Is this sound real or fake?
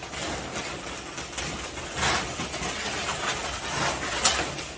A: real